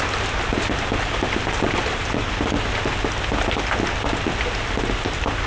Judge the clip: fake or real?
real